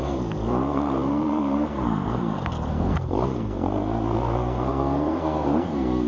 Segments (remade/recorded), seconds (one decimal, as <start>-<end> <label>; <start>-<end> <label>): 0.0-6.1 remade